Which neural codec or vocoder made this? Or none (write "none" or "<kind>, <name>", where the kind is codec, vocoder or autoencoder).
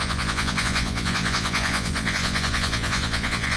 vocoder, Vocos